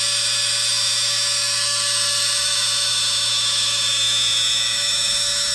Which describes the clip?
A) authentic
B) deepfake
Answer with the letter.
B